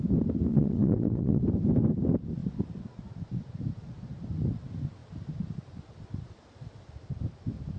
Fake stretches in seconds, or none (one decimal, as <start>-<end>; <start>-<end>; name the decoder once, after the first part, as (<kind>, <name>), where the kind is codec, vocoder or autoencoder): 0.5-1.4 (vocoder, Vocos)